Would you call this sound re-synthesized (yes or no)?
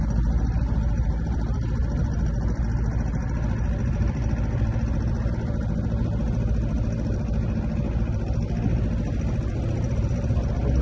no